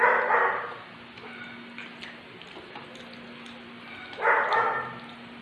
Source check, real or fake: real